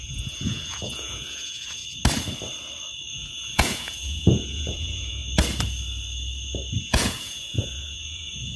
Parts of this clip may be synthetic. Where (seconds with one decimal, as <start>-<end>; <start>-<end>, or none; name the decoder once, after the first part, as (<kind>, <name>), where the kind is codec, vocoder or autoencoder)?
0.0-1.8 (vocoder, Vocos); 3.1-5.2; 6.8-8.6